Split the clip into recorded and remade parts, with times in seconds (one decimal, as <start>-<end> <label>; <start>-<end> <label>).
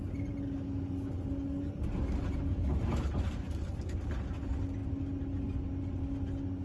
0.0-6.6 recorded